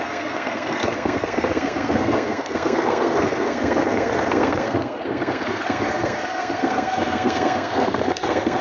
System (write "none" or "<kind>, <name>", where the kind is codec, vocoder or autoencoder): codec, SNAC